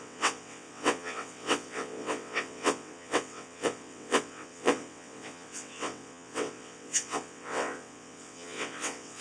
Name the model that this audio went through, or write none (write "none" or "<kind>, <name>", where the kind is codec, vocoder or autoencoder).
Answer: vocoder, WaveNeXt